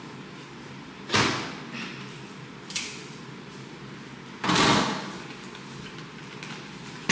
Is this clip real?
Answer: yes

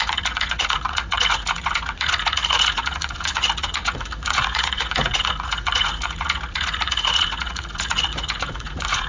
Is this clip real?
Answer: no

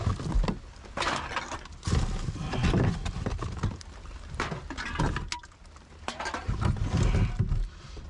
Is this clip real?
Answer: yes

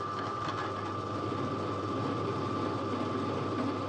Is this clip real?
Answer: yes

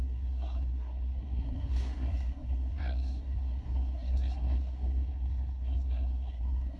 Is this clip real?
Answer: no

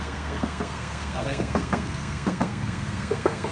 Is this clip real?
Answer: no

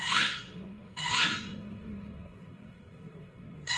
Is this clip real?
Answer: no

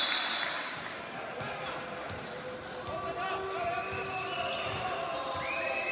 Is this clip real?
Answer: yes